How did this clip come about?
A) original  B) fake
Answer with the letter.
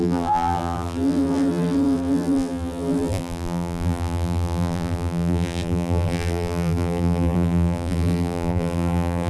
B